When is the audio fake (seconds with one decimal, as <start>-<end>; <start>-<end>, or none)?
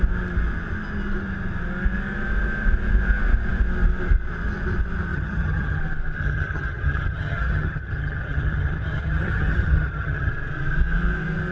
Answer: 5.1-5.8; 6.2-10.3